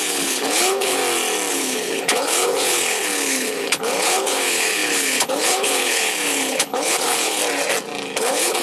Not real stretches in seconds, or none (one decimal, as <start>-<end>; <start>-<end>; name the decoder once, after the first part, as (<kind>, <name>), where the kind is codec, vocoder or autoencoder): 0.0-1.0 (codec, HILCodec); 1.5-7.4; 8.2-8.6